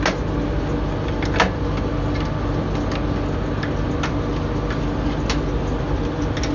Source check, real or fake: real